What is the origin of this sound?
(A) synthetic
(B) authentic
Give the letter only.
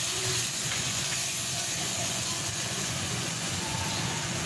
A